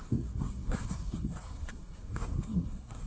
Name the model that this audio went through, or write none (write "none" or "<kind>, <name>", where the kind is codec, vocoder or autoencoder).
codec, SNAC